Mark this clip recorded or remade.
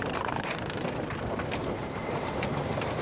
remade